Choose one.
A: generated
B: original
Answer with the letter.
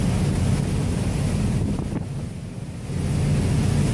B